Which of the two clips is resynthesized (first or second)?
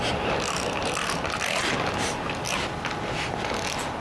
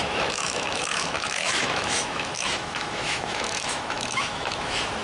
second